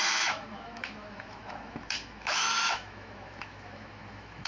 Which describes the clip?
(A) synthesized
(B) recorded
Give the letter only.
A